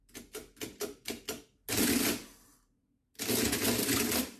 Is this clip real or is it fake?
real